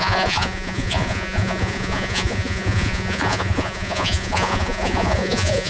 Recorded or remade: remade